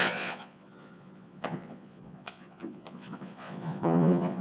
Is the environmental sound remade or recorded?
remade